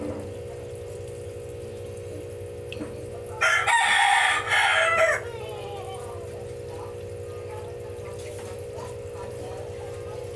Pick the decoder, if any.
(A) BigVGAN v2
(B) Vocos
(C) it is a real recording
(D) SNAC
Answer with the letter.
C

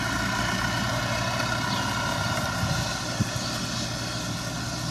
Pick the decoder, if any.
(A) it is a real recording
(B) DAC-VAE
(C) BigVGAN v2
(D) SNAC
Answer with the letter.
A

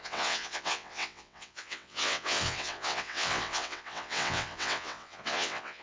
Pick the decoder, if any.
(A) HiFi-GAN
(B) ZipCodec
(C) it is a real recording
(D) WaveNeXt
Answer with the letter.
D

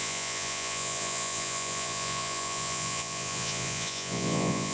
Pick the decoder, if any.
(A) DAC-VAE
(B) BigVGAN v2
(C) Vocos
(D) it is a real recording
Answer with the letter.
C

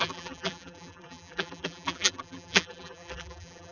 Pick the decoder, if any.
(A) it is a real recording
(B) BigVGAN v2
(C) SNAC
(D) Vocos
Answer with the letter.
B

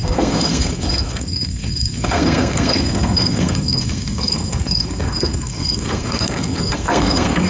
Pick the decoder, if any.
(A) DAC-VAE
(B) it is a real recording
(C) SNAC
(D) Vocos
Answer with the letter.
C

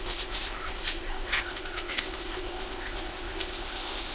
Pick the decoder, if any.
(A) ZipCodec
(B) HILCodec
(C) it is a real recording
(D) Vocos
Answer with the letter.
A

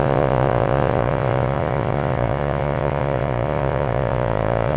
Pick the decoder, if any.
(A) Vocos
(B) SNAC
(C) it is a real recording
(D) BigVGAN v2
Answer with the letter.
A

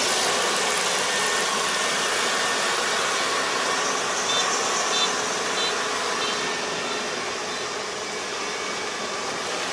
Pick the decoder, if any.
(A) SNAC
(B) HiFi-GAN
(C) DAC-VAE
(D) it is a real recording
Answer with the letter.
D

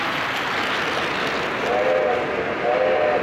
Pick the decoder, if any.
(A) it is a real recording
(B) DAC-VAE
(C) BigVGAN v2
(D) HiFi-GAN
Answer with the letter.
A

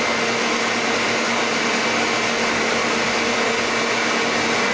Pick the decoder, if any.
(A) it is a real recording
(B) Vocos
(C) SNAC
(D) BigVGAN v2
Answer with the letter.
A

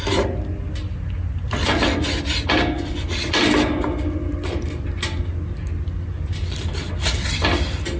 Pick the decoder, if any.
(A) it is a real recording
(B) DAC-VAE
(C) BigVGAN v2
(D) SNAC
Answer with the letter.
A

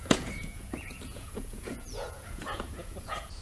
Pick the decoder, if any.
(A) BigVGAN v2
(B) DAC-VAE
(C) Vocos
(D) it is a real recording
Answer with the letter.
C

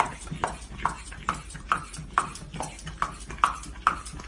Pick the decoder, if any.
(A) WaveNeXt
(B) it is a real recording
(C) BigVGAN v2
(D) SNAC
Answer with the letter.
B